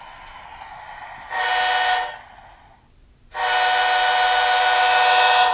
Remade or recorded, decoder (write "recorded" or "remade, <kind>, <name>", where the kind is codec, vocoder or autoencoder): recorded